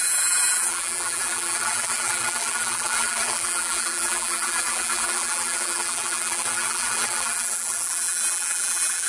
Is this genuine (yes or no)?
no